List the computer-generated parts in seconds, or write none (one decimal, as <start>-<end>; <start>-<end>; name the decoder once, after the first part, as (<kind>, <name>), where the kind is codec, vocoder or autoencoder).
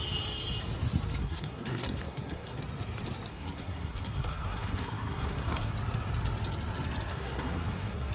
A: 1.2-2.6 (codec, SNAC); 3.3-5.7; 7.1-8.1